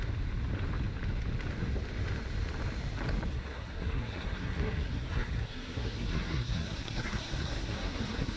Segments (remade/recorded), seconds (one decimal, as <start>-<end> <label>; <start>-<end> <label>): 0.0-3.3 recorded; 3.3-8.4 remade